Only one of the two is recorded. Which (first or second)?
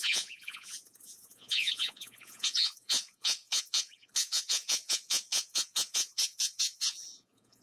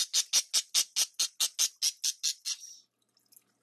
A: second